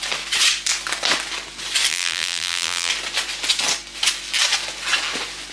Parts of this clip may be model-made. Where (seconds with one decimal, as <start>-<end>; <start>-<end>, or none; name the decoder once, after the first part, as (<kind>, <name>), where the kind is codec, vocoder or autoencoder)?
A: 1.9-2.9 (vocoder, BigVGAN v2)